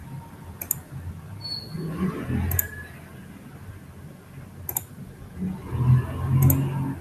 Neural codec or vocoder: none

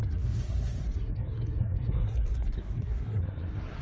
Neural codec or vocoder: codec, SNAC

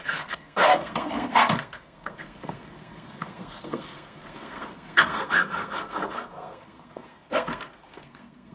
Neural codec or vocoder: codec, SNAC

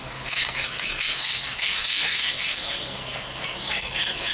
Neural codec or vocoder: codec, SNAC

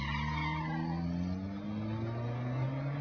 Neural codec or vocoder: none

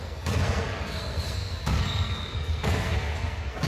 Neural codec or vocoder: codec, SNAC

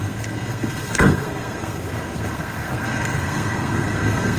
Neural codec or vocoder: codec, SNAC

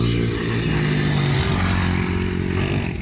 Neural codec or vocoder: none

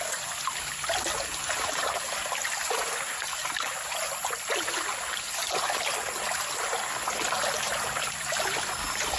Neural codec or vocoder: none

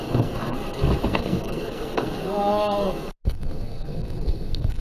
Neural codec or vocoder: codec, SNAC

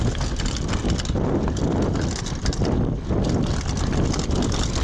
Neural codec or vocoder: none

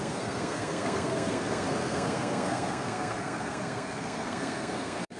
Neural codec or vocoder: codec, SNAC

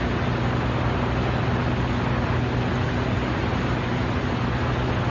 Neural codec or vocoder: none